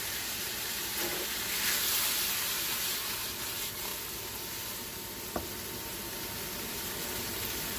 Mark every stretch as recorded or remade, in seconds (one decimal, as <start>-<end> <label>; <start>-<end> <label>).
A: 0.0-1.0 remade; 1.0-1.8 recorded; 1.8-3.9 remade; 3.9-5.8 recorded; 5.8-7.8 remade